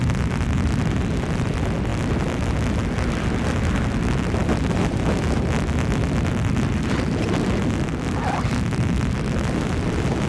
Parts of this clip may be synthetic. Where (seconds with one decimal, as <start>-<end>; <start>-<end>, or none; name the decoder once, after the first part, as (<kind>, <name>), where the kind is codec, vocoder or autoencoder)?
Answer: 0.0-1.9 (vocoder, BigVGAN v2); 3.1-10.3